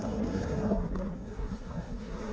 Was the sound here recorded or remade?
remade